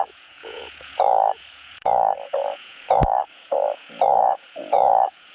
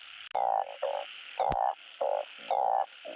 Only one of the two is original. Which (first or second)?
second